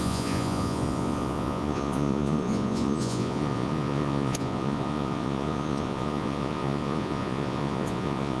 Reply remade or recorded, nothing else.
remade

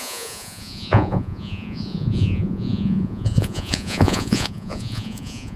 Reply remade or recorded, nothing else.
remade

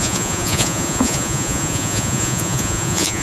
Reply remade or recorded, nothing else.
remade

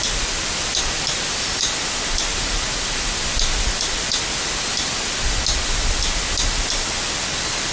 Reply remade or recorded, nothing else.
recorded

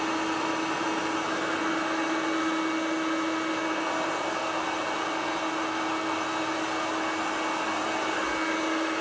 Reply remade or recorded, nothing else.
recorded